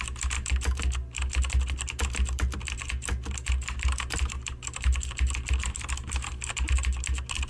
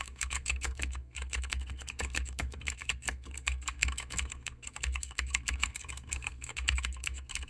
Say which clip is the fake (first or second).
second